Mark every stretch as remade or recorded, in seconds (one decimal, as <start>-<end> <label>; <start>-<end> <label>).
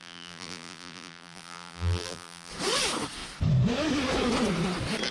0.0-2.5 remade; 2.5-5.1 recorded